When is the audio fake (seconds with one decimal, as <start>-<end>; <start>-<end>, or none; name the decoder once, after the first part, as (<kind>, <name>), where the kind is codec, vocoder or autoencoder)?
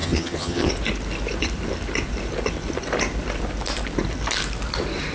0.0-0.7 (vocoder, HiFi-GAN)